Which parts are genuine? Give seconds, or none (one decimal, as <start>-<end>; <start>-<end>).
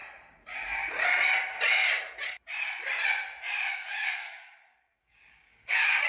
0.0-3.7